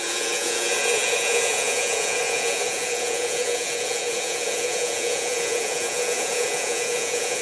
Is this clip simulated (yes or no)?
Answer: yes